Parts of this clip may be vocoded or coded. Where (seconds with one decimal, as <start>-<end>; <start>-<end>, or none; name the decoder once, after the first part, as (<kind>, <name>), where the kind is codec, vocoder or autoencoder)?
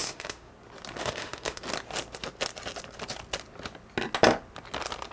0.0-0.5 (autoencoder, DAC-VAE); 1.0-1.6